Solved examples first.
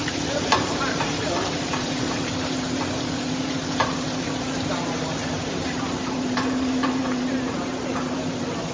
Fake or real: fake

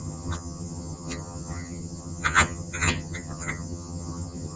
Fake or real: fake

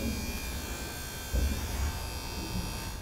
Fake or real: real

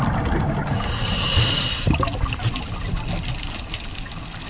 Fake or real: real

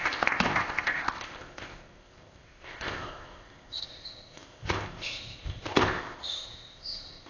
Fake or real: fake